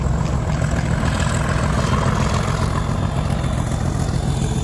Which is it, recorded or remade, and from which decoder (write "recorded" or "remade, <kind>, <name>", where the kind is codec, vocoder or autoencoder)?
recorded